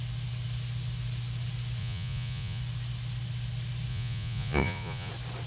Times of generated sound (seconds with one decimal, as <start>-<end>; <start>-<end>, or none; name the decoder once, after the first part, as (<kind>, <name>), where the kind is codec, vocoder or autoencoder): 1.8-2.6 (vocoder, Vocos); 3.9-5.1